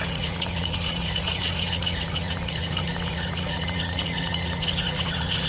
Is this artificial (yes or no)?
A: yes